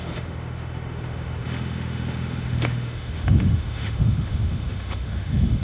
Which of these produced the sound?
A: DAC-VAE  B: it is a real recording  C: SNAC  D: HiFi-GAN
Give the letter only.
A